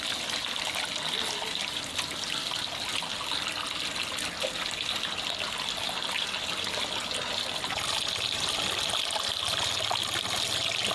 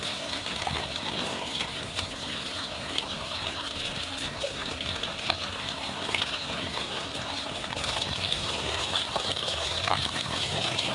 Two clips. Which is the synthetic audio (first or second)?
second